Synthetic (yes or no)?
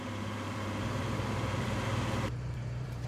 yes